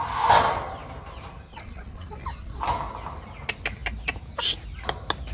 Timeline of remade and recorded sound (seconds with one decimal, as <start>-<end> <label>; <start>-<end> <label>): 0.0-1.5 recorded; 1.5-2.6 remade; 2.6-5.3 recorded